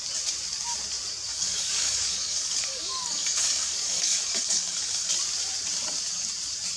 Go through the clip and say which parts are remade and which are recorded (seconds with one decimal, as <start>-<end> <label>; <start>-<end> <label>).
0.0-1.3 recorded; 1.3-5.1 remade; 5.1-6.8 recorded